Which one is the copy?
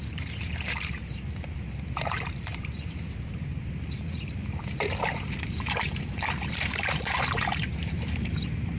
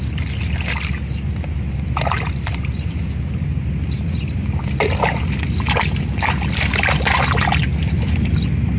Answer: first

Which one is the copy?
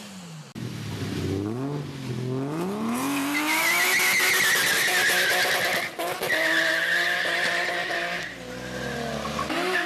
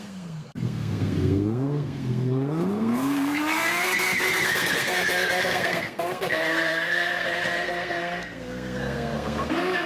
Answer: second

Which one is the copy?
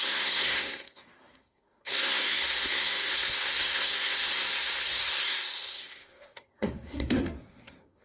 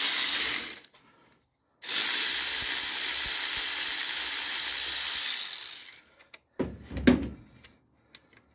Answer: first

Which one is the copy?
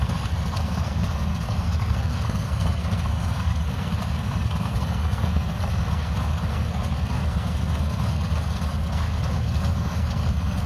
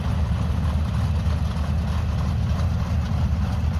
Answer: first